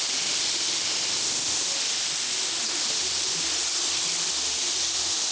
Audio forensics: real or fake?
real